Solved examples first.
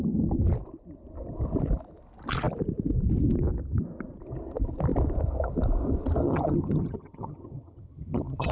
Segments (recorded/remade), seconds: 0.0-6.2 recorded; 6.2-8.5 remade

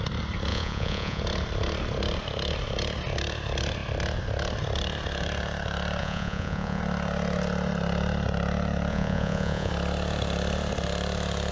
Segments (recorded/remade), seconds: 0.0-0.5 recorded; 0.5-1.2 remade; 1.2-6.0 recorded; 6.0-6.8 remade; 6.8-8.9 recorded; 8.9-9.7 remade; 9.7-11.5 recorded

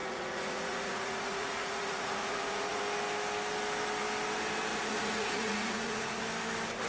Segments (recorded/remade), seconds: 0.0-2.8 remade; 2.8-4.7 recorded; 4.7-6.2 remade; 6.2-6.9 recorded

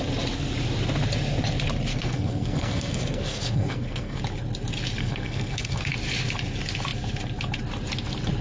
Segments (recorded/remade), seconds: 0.0-1.9 recorded; 1.9-4.2 remade; 4.2-5.0 recorded; 5.0-5.9 remade; 5.9-8.4 recorded

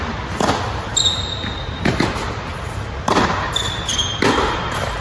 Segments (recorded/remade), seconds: 0.0-5.0 recorded